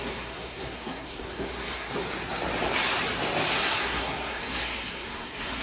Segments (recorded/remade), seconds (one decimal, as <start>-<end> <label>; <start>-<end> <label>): 0.0-1.9 remade; 1.9-3.5 recorded; 3.5-5.6 remade